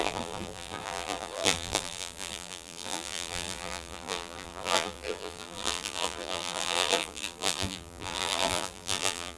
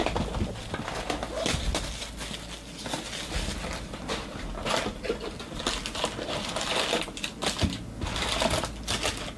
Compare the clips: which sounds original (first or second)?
second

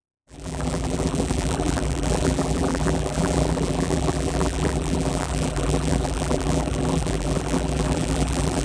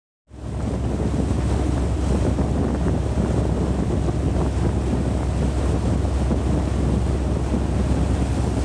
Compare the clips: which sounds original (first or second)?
second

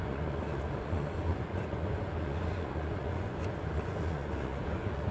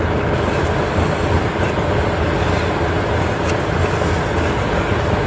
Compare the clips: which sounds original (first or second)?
second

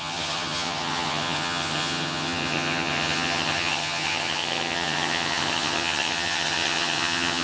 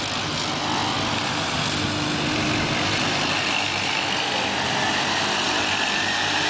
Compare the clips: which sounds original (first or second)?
second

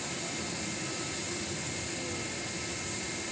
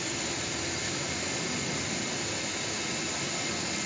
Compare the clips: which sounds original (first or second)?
first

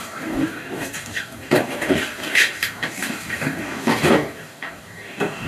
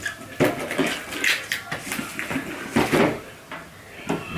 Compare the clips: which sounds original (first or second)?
second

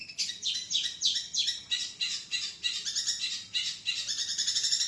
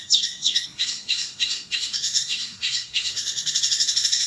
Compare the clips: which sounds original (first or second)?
first